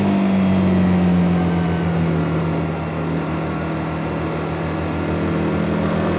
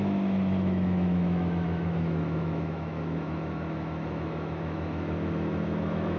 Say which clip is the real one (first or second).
first